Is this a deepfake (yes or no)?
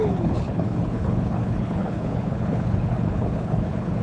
yes